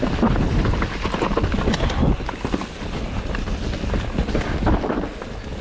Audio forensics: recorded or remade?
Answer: recorded